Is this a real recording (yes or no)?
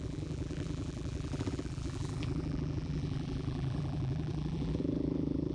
no